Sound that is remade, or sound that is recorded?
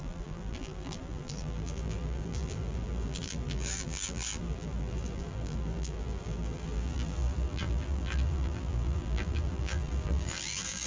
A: remade